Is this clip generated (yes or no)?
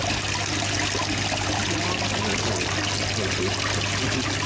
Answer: no